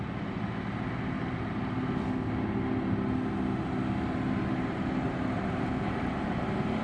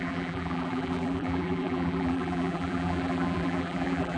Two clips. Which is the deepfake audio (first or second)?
second